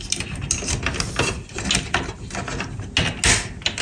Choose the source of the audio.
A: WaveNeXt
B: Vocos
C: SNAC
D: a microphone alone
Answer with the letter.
D